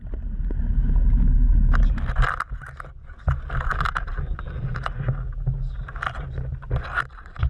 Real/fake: real